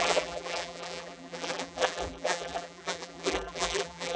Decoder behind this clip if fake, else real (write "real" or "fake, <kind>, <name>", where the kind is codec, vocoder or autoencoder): fake, vocoder, BigVGAN v2